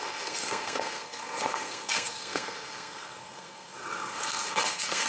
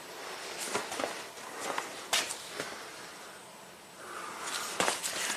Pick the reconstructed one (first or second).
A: first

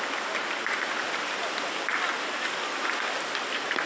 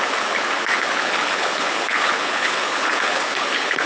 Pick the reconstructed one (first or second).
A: second